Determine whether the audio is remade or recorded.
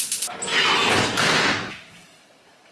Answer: recorded